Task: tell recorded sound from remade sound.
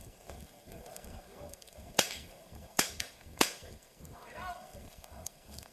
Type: remade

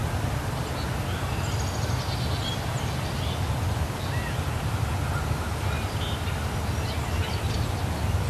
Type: recorded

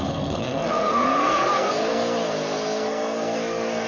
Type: remade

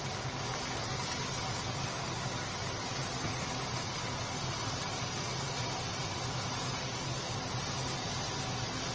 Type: recorded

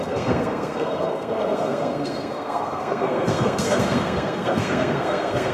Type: remade